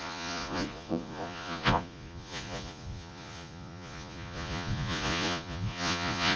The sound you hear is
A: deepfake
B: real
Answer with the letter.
A